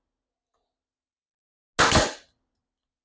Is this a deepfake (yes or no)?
no